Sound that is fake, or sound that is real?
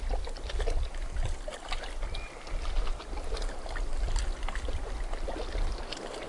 real